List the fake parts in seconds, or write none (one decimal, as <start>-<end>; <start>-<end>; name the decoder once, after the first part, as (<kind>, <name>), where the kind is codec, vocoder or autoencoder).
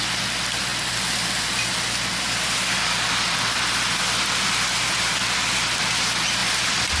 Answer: 6.4-7.0 (vocoder, BigVGAN v2)